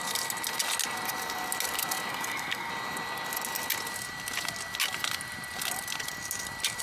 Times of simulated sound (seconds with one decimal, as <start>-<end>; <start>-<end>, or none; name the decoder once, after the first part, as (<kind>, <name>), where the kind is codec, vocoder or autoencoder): 2.1-2.7 (codec, SNAC)